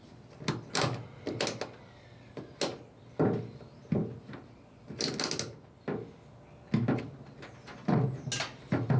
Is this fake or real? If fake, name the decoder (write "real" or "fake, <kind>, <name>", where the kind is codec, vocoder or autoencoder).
real